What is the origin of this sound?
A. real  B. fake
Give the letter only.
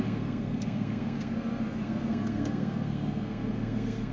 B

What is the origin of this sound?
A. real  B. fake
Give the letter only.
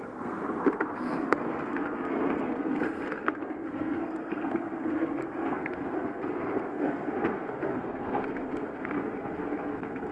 B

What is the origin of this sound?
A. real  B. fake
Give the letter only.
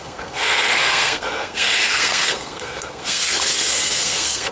B